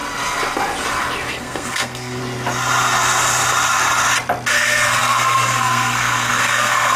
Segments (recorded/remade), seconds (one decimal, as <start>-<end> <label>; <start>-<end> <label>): 0.0-1.3 recorded; 1.3-2.2 remade; 2.2-4.5 recorded; 4.5-7.0 remade